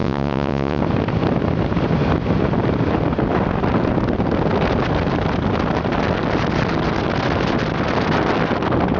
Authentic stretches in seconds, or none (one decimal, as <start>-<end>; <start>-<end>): 0.8-9.0